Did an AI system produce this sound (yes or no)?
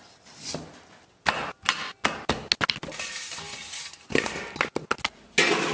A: no